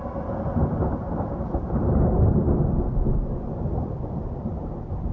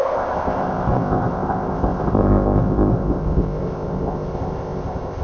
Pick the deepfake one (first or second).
second